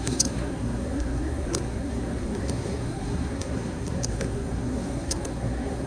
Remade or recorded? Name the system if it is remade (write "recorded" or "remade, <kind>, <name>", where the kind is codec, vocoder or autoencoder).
remade, codec, SNAC